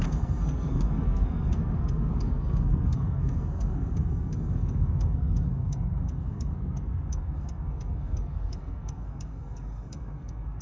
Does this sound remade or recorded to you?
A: remade